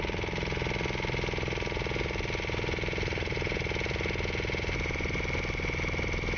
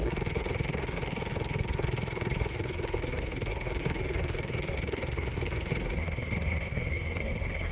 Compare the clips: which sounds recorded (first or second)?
first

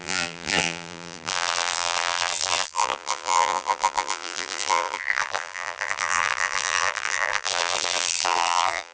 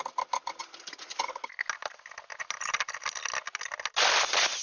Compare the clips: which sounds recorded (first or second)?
second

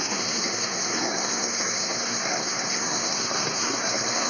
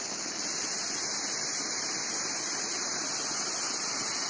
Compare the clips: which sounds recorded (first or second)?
second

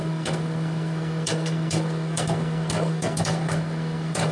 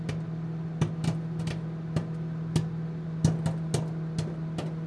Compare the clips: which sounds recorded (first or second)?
second